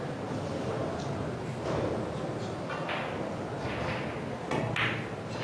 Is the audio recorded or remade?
recorded